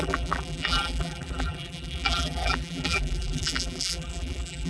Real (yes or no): no